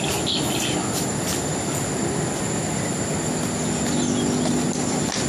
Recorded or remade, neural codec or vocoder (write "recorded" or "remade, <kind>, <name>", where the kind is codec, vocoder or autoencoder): recorded